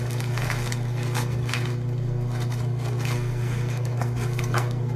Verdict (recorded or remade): remade